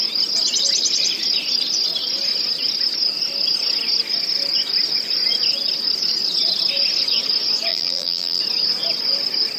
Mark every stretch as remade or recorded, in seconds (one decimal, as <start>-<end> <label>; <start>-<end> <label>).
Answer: 0.0-7.7 recorded; 7.7-8.4 remade; 8.4-9.6 recorded